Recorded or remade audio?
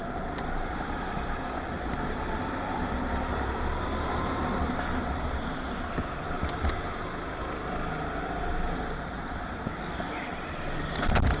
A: recorded